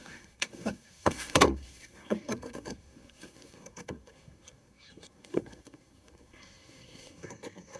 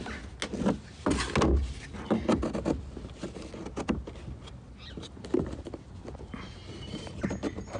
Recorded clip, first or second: second